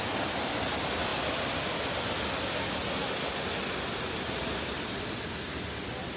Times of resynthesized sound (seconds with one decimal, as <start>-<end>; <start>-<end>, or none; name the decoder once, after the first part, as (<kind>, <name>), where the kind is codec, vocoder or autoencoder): none